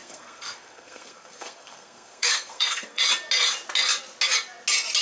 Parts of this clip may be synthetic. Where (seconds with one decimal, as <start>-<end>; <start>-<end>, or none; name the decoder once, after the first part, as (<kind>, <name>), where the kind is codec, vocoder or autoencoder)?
0.0-3.0 (codec, SNAC)